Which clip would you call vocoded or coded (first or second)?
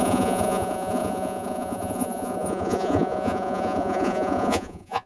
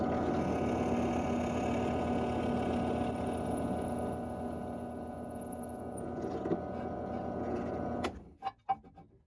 first